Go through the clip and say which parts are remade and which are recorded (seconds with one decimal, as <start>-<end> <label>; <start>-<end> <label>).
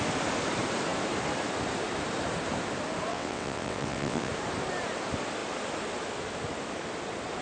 0.0-3.1 recorded; 3.1-4.3 remade; 4.3-7.4 recorded